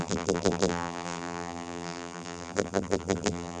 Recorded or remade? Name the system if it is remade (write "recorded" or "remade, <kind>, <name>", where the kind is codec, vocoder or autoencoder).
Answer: remade, vocoder, BigVGAN v2